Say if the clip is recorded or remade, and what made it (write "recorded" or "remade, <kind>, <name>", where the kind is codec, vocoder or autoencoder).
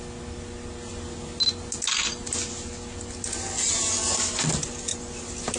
recorded